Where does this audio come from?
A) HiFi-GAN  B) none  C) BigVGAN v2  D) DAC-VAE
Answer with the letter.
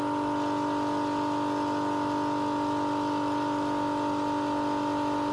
B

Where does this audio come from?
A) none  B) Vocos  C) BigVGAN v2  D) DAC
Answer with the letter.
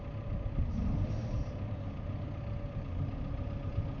A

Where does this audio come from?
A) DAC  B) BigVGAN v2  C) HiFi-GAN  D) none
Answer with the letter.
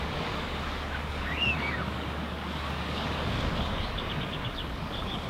A